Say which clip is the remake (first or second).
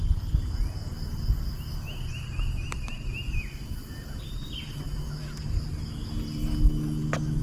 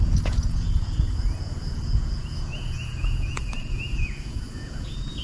second